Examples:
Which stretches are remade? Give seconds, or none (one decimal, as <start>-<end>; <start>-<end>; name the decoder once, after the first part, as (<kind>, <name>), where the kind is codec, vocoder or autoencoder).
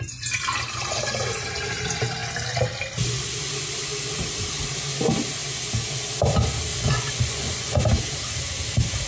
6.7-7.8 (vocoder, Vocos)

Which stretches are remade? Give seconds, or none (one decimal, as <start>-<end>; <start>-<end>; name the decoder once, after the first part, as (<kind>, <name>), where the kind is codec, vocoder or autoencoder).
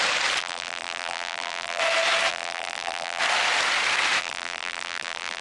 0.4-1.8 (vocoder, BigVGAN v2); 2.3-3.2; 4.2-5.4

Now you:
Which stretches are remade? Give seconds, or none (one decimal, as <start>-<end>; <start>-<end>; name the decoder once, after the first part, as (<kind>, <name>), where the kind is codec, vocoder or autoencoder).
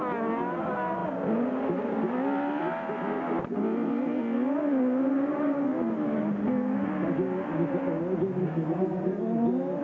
8.4-9.2 (codec, SNAC)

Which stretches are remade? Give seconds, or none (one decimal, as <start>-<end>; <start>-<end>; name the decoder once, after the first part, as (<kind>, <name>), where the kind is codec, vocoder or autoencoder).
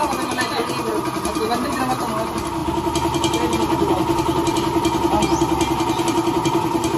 none